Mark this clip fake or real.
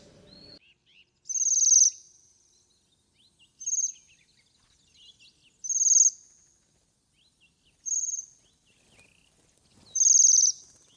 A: real